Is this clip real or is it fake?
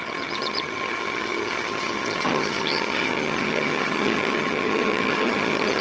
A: fake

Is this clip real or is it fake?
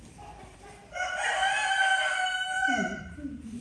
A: fake